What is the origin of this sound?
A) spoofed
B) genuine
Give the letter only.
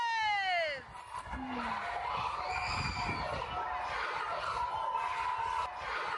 B